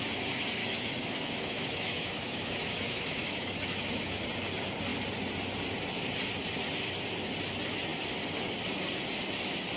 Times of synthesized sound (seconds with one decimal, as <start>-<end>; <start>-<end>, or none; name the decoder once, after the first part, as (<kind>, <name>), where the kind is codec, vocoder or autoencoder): 0.6-4.2 (autoencoder, DAC-VAE)